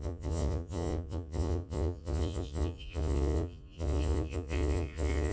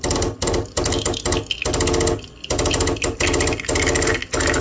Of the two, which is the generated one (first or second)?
first